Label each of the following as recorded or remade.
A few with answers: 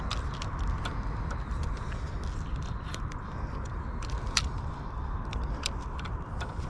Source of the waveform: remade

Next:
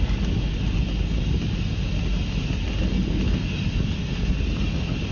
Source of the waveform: recorded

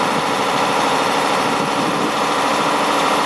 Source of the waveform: remade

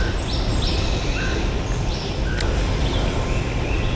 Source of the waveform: recorded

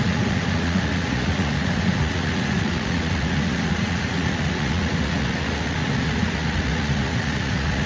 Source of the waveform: remade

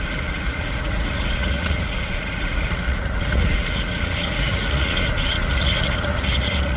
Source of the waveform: remade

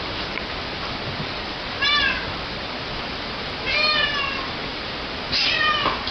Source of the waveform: recorded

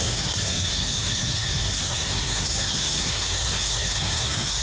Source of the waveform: remade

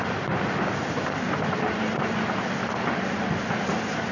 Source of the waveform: recorded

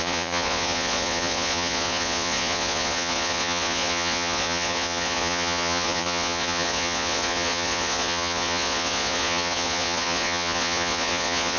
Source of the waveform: remade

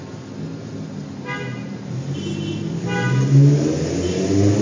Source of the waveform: recorded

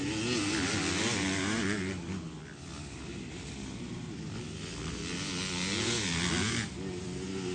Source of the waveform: recorded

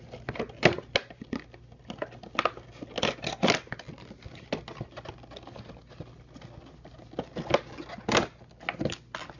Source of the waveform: recorded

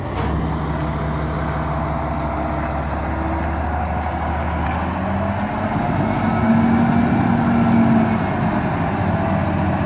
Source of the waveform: recorded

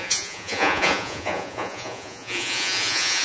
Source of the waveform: remade